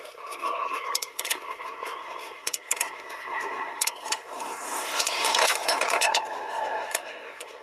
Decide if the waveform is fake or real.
fake